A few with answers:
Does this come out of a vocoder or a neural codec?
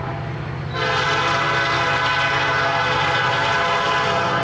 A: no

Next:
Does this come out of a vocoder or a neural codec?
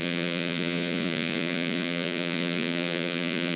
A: yes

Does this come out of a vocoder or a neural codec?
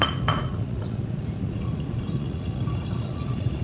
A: yes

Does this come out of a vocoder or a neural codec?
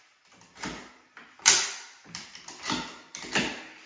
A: no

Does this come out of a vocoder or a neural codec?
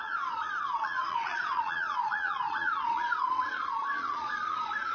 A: yes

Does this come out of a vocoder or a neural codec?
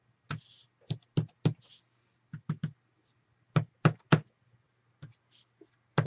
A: no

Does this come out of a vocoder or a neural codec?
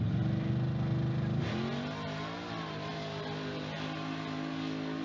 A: no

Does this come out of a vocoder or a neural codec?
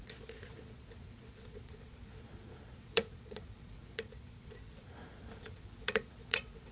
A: yes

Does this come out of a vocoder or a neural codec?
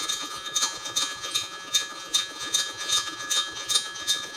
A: yes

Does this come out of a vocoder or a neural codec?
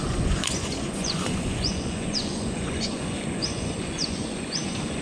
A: yes